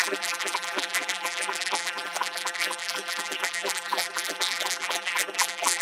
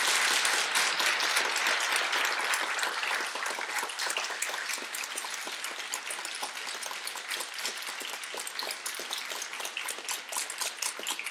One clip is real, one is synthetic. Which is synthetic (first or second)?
first